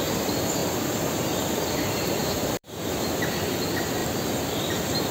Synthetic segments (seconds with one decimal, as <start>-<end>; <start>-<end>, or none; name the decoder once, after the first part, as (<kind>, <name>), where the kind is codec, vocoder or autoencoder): 2.2-3.0 (vocoder, BigVGAN v2)